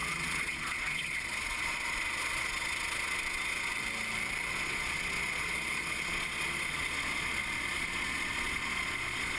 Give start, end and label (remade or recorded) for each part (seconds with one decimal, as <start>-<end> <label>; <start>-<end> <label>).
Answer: 0.0-3.7 remade; 3.7-4.5 recorded; 4.5-9.4 remade